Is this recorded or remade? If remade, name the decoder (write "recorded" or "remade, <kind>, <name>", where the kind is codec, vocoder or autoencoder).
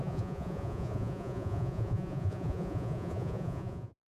remade, vocoder, Vocos